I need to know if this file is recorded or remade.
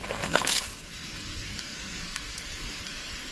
remade